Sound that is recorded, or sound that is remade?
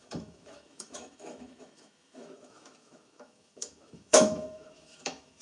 remade